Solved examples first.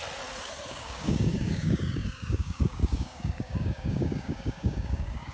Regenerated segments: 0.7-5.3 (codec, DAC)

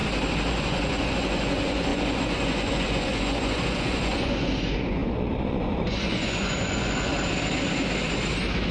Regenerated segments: 0.5-7.1 (vocoder, Vocos)

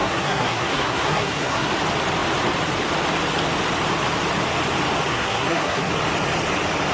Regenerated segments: 0.0-1.7 (codec, SNAC); 5.1-5.9

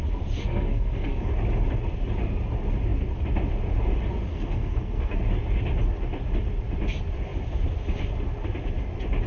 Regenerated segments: 0.4-1.3 (codec, SNAC); 4.3-5.2

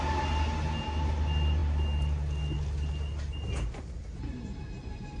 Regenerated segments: none

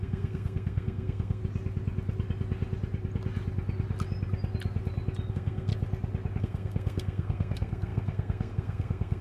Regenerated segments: 0.0-1.4 (codec, SNAC); 5.3-5.7; 6.4-9.2